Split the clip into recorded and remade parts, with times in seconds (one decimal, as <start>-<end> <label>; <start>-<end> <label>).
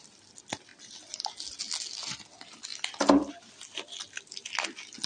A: 0.0-5.1 recorded